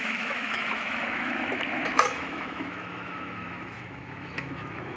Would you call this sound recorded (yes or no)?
no